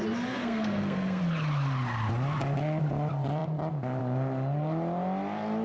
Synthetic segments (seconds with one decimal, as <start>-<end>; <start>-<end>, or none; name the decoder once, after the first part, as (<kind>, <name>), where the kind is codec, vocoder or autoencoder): 0.4-1.2 (codec, SNAC)